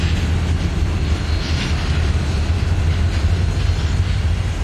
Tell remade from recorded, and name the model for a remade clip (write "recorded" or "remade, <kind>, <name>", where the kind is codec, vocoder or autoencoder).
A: recorded